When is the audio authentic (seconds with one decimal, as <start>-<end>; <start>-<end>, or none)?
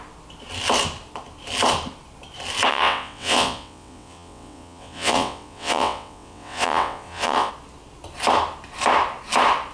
0.0-2.7; 7.5-9.7